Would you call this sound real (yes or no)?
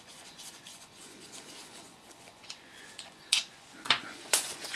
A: no